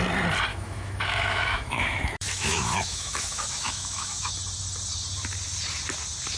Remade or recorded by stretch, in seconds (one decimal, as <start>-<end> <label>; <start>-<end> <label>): 0.0-0.5 recorded; 0.5-4.3 remade; 4.3-6.4 recorded